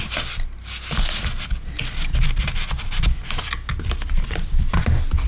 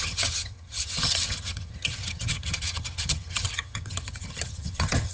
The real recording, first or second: first